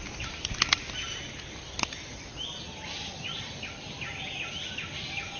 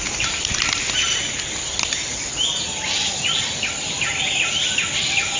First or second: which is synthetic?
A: second